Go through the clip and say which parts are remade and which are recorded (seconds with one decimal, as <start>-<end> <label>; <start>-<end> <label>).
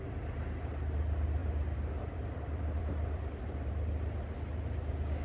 0.0-1.4 recorded; 1.4-3.7 remade; 3.7-5.2 recorded